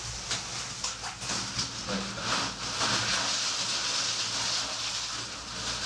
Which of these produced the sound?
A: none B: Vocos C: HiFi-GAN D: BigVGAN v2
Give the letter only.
A